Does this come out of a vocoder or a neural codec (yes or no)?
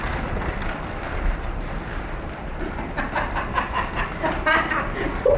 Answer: yes